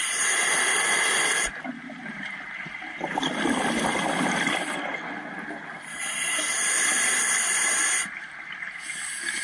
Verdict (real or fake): real